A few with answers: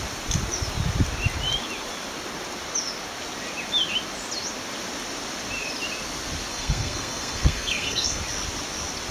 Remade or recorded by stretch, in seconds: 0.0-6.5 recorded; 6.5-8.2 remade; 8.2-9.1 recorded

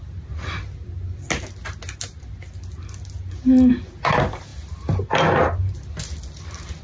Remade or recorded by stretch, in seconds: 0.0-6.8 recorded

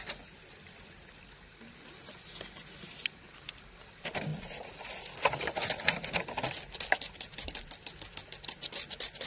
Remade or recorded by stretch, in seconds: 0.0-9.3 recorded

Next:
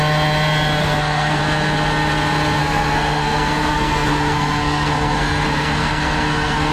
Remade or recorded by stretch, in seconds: 0.0-0.8 recorded; 0.8-1.4 remade; 1.4-2.6 recorded; 2.6-6.7 remade

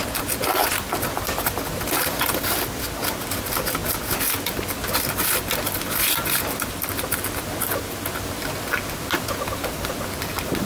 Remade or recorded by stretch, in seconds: 0.0-10.7 recorded

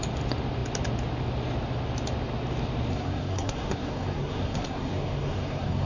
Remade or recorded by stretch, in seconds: 0.0-2.9 recorded; 2.9-5.9 remade